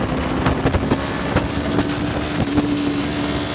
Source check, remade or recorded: recorded